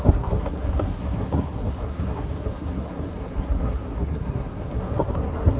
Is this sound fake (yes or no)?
yes